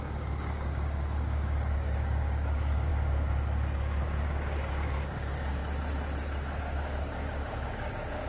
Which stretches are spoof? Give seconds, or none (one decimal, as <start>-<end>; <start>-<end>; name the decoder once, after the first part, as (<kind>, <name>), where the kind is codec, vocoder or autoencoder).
0.0-5.6 (codec, DAC); 6.6-8.3